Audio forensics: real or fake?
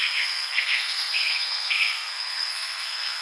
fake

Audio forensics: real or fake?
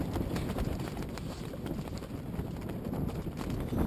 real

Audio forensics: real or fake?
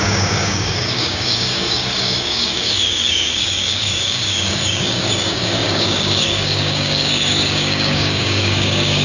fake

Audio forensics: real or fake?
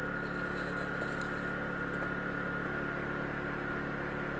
real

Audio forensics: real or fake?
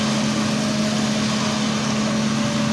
real